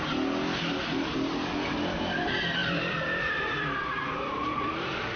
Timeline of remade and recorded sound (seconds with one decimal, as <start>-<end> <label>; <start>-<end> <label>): 0.0-2.6 recorded; 2.6-5.2 remade